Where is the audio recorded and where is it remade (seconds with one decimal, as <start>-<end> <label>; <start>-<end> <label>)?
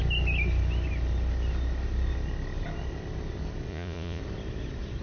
0.0-3.7 recorded; 3.7-4.2 remade; 4.2-5.0 recorded